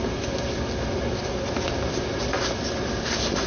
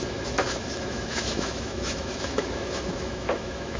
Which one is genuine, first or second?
first